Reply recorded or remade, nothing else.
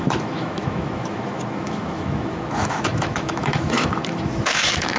remade